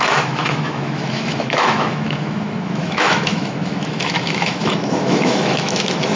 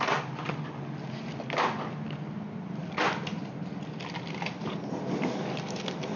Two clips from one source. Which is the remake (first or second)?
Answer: first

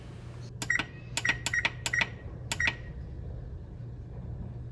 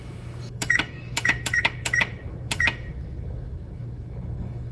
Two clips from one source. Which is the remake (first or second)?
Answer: second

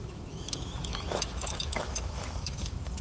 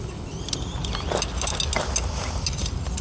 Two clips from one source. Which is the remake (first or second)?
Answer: first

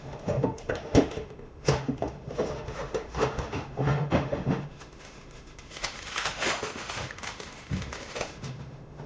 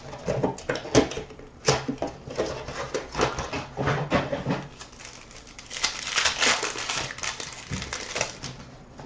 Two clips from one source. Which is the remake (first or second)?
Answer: first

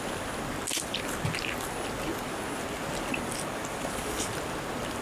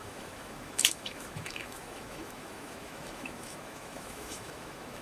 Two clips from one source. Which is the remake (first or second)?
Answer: second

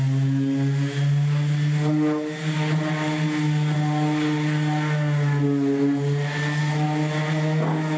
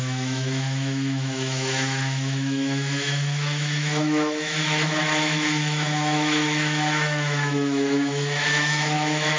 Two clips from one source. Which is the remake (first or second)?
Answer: second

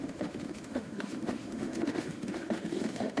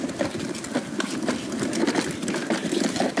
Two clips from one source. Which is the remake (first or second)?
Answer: first